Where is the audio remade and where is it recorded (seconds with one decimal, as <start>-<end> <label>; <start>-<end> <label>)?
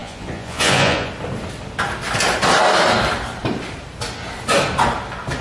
0.0-1.1 remade; 1.1-5.4 recorded